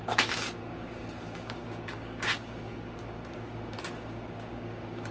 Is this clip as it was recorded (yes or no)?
no